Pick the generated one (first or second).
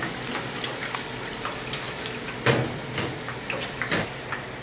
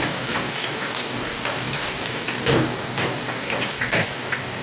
second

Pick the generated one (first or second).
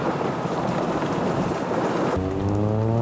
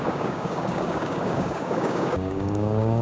second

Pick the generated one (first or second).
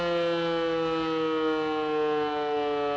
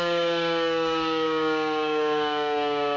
second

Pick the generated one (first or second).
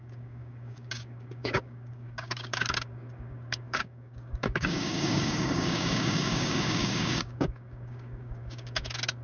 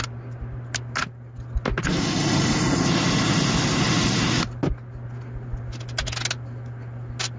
first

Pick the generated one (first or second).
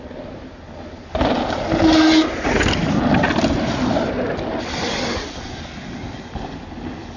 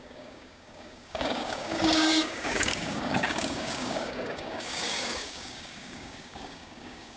second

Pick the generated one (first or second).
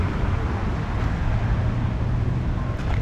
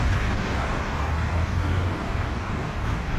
second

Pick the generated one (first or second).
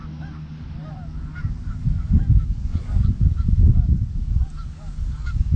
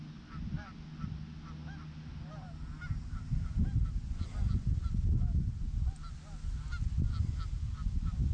first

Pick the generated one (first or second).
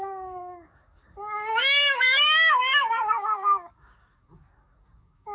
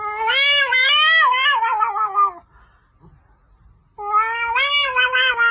first